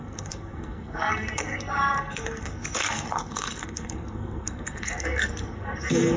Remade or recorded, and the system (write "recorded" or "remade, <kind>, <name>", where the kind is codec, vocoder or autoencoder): remade, codec, SNAC